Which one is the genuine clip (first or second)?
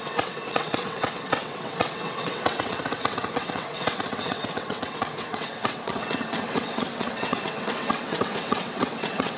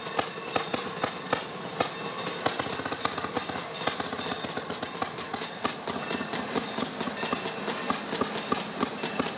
second